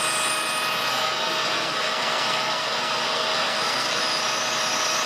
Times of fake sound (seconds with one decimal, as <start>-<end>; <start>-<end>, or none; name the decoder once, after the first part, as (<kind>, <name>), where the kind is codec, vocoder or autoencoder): 0.9-4.0 (codec, SNAC)